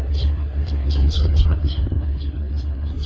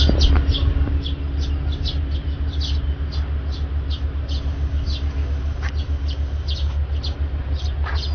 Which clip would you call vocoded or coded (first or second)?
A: first